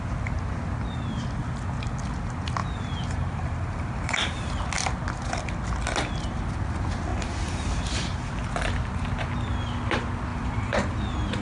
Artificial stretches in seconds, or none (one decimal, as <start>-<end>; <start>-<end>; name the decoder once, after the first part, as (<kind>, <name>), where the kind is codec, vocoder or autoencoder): 2.6-4.5 (vocoder, BigVGAN v2); 7.1-8.3; 10.3-11.0